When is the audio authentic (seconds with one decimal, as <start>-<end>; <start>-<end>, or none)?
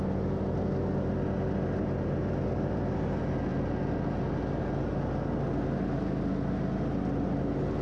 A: 0.0-7.8